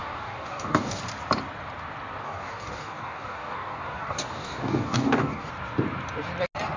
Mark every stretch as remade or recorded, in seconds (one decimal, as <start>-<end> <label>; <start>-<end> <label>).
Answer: 0.0-1.0 remade; 1.0-2.2 recorded; 2.2-5.5 remade; 5.5-6.8 recorded